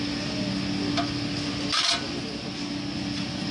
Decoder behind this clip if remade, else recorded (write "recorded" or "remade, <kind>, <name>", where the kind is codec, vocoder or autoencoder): recorded